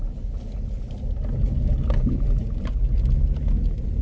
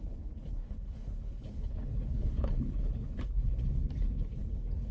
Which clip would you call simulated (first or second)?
second